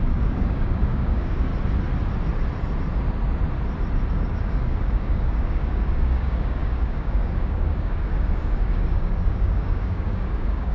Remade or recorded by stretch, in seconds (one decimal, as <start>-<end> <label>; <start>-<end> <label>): 0.0-1.5 remade; 1.5-4.1 recorded; 4.1-10.7 remade